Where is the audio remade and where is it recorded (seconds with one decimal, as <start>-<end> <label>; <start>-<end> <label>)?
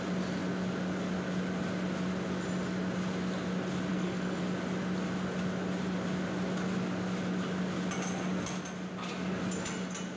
0.0-3.9 recorded; 3.9-4.4 remade; 4.4-10.2 recorded